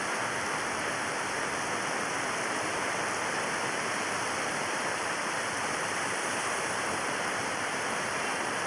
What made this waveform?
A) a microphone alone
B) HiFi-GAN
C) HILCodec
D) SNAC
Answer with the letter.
A